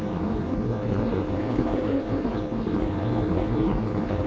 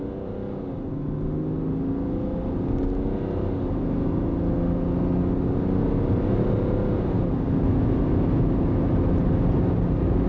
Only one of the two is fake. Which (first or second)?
first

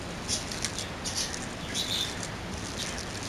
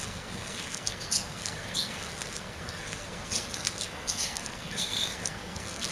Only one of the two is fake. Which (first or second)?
second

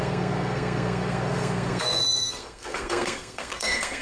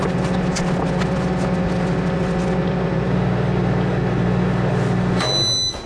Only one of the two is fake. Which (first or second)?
first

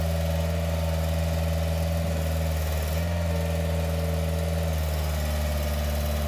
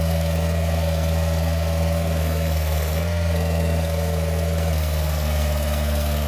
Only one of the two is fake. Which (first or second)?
second